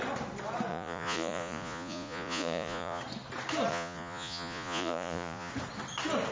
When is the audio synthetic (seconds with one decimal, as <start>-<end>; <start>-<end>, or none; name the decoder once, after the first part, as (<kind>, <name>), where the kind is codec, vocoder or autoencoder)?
0.7-3.0 (vocoder, Vocos); 3.7-5.5